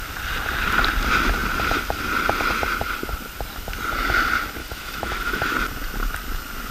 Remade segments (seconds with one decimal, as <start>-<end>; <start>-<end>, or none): 4.6-5.5